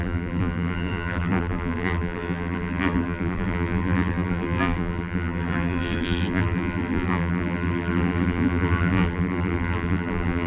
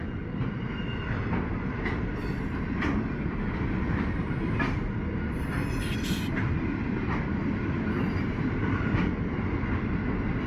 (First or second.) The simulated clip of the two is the first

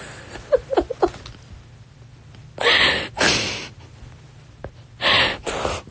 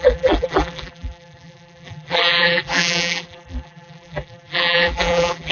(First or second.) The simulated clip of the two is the second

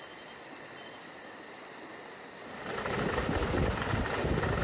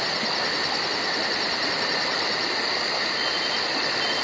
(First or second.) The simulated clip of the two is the first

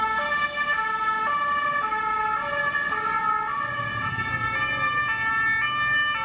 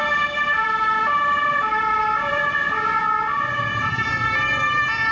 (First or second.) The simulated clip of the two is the second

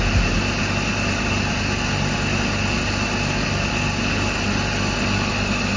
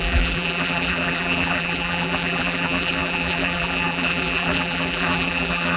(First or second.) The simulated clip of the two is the second